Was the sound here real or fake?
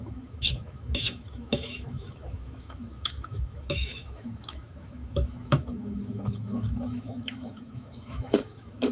fake